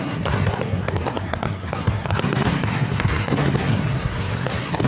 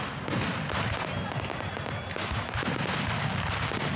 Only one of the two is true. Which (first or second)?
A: second